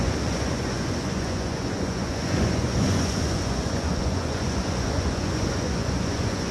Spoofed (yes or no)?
yes